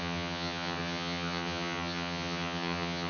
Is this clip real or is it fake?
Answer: fake